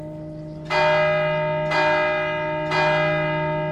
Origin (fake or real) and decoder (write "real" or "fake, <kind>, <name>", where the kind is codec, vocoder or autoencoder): real